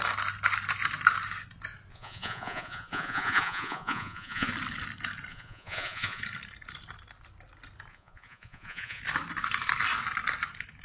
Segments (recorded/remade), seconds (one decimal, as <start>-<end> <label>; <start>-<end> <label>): 0.0-1.9 recorded; 1.9-4.5 remade; 4.5-5.3 recorded; 5.3-6.2 remade; 6.2-7.9 recorded; 7.9-9.0 remade; 9.0-10.8 recorded